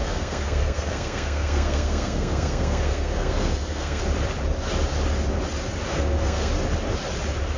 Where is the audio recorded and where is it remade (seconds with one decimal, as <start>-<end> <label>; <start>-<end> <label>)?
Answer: 0.0-4.0 remade; 4.0-5.9 recorded; 5.9-6.5 remade; 6.5-7.6 recorded